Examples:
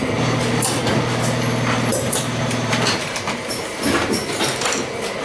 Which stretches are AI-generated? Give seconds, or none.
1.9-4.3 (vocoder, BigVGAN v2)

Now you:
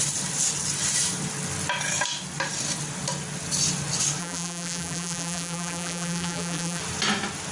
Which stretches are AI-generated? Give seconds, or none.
4.2-6.8 (vocoder, BigVGAN v2)

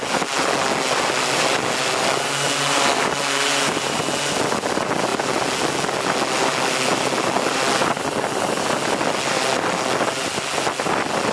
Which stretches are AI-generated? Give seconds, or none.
none

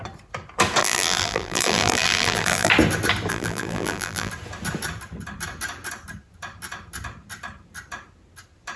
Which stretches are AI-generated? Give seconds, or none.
0.8-2.7 (vocoder, BigVGAN v2); 3.3-4.3